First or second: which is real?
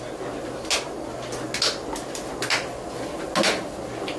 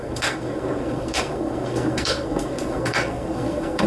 first